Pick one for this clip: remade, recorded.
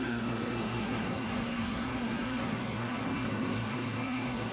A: remade